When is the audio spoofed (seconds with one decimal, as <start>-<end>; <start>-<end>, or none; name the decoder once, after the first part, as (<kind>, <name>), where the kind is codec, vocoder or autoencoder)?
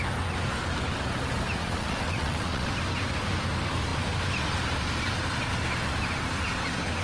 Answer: 1.6-2.7 (vocoder, WaveNeXt)